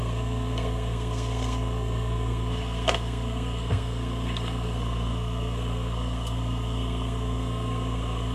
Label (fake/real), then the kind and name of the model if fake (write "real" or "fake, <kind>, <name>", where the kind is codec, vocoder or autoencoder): fake, codec, SNAC